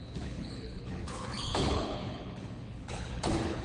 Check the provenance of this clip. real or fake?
fake